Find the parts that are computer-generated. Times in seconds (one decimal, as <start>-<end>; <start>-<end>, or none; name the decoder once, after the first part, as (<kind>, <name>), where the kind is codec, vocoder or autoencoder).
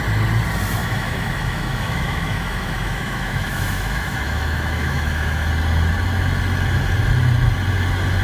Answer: 0.8-5.5 (autoencoder, DAC-VAE)